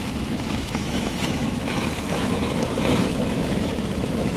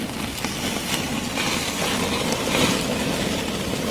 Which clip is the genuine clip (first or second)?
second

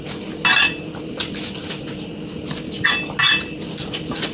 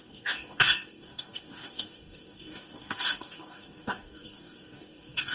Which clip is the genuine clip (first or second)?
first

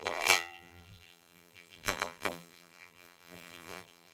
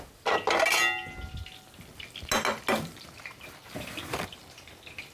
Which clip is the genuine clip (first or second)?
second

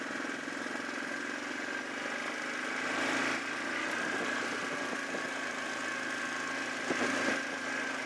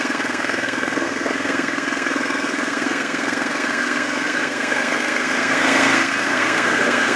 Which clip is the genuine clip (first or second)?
first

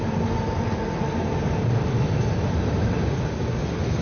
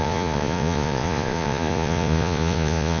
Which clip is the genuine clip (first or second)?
first